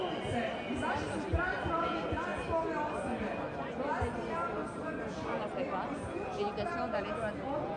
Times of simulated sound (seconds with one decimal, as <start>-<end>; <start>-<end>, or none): none